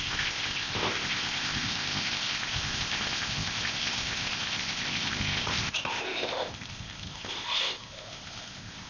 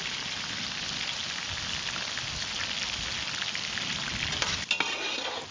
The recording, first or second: second